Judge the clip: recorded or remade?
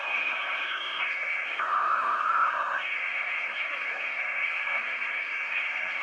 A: remade